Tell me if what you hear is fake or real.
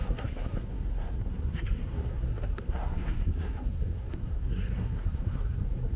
fake